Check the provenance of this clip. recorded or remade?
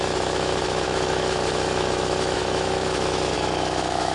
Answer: remade